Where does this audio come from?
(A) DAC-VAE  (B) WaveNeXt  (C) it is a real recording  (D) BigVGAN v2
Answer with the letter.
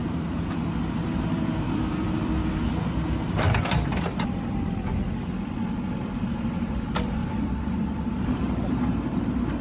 D